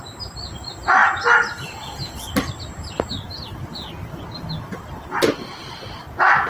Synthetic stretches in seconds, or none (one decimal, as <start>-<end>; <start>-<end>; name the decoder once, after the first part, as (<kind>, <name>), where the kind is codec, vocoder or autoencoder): none